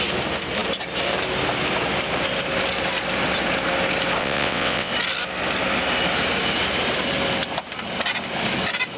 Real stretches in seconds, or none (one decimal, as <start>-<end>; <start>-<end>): 0.0-4.2; 4.9-9.0